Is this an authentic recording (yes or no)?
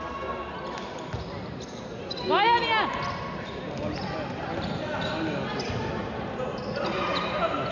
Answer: yes